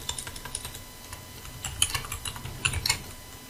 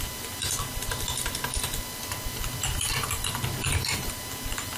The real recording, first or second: first